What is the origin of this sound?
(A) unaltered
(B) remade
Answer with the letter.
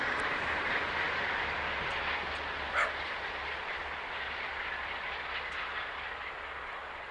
A